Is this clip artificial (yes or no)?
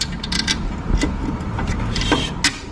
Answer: no